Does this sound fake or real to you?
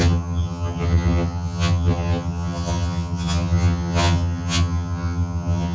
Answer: fake